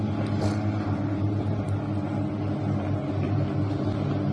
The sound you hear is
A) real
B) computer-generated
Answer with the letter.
A